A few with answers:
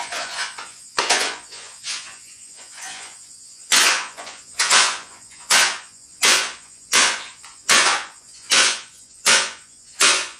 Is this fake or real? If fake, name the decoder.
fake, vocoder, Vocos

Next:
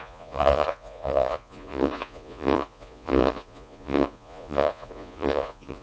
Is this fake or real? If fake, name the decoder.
fake, vocoder, Vocos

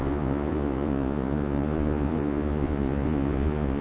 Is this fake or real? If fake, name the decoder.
fake, vocoder, Vocos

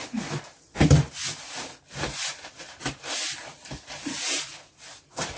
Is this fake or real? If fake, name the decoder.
real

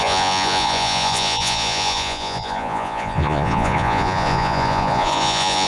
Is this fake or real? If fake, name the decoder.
fake, vocoder, Vocos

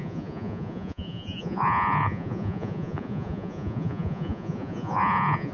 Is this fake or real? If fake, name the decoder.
fake, vocoder, Vocos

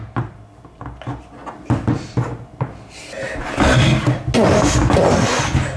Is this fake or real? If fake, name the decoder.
real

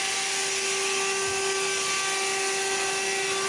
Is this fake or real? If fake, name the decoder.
real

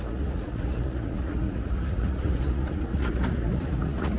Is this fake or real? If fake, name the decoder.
fake, vocoder, Vocos